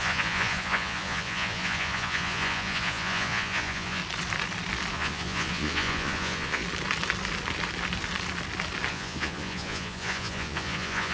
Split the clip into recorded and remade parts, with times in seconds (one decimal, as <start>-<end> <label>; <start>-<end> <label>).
0.0-4.0 remade; 4.0-4.9 recorded; 4.9-6.6 remade; 6.6-8.9 recorded; 8.9-11.1 remade